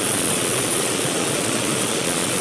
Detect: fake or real fake